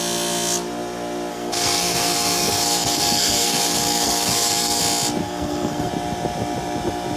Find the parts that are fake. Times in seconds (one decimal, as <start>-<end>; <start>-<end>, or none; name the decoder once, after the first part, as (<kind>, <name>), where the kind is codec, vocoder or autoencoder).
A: 1.3-4.8 (codec, SNAC); 5.2-5.9